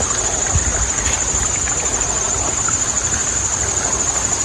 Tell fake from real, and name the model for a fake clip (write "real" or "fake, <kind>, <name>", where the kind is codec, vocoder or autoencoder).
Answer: real